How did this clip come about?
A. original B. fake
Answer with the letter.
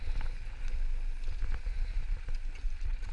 A